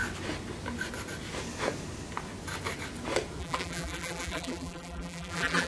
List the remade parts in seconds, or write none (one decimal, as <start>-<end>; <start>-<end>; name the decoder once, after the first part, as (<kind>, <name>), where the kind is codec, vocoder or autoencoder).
3.4-5.7 (vocoder, BigVGAN v2)